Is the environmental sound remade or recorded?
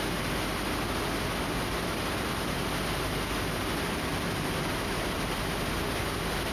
recorded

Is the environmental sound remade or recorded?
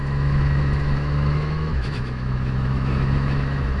remade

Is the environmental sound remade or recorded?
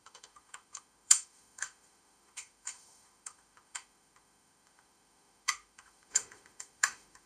remade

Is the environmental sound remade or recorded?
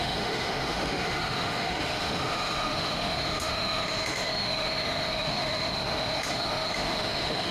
remade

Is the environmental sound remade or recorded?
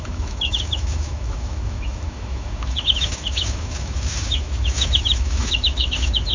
remade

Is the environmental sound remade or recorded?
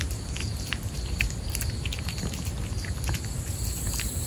recorded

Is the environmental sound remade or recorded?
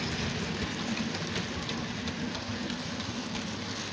recorded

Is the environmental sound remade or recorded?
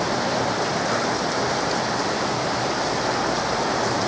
recorded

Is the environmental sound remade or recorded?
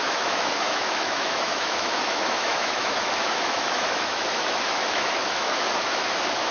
remade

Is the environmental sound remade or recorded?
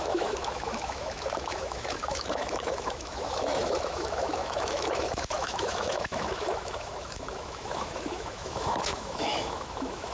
remade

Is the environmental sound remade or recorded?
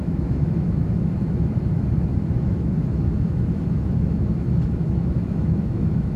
remade